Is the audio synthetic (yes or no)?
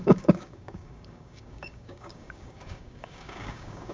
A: yes